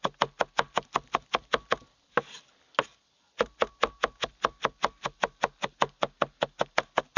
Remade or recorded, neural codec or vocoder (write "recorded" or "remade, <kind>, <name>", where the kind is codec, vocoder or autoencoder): recorded